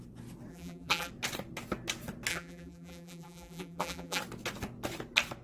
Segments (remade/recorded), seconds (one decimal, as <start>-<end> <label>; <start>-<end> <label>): 0.0-0.5 recorded; 0.5-1.1 remade; 1.1-2.3 recorded; 2.3-4.2 remade; 4.2-5.4 recorded